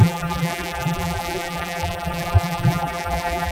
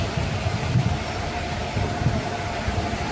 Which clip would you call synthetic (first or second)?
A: first